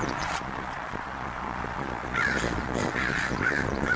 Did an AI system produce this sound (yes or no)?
yes